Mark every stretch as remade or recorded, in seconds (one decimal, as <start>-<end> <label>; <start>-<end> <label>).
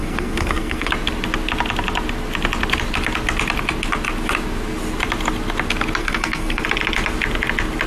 0.0-0.9 remade; 0.9-6.0 recorded; 6.0-6.6 remade; 6.6-7.9 recorded